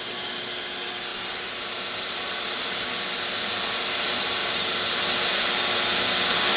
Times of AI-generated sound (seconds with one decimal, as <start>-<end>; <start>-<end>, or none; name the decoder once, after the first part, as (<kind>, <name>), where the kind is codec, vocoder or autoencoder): 1.1-2.1 (vocoder, BigVGAN v2); 4.4-5.0